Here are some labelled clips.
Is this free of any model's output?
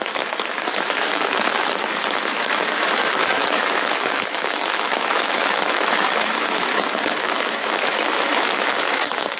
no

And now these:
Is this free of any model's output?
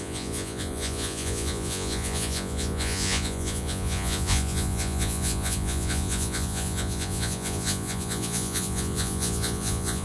no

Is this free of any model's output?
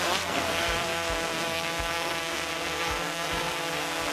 no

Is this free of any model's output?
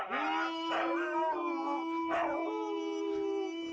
yes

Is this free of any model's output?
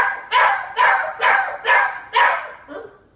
yes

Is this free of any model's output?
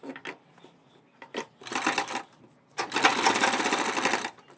yes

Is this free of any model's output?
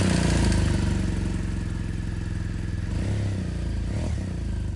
yes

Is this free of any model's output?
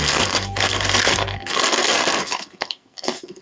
no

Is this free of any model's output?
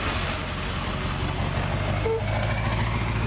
yes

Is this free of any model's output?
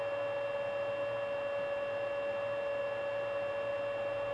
yes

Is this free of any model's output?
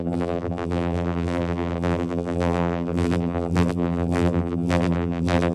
no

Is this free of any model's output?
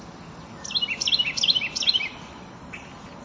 yes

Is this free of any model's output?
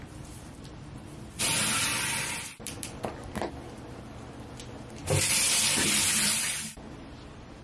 no